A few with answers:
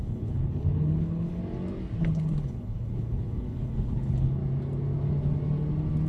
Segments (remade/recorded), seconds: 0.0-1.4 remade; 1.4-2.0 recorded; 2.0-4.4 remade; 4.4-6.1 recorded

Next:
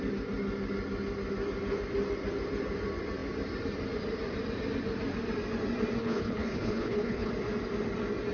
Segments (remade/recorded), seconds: 0.0-6.0 recorded; 6.0-7.3 remade; 7.3-8.3 recorded

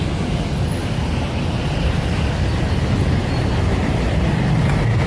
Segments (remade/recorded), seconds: 0.0-5.1 recorded

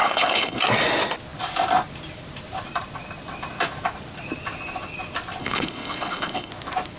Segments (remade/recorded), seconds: 0.0-0.6 remade; 0.6-5.4 recorded; 5.4-6.5 remade; 6.5-7.0 recorded

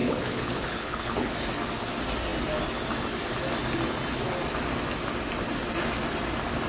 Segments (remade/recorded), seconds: 0.0-1.3 remade; 1.3-6.7 recorded

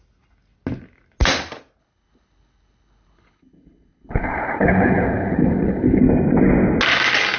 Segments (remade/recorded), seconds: 0.0-1.8 recorded; 1.8-6.0 remade; 6.0-7.4 recorded

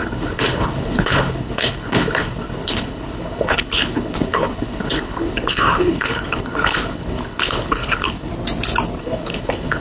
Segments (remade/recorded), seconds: 0.0-8.3 remade; 8.3-9.0 recorded; 9.0-9.8 remade